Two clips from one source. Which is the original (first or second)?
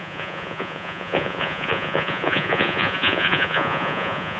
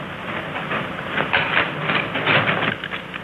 second